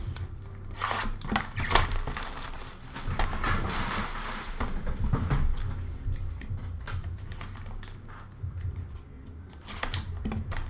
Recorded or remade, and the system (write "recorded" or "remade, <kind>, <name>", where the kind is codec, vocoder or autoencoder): recorded